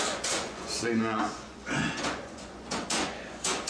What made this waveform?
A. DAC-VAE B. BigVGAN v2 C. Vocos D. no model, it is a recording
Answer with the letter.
C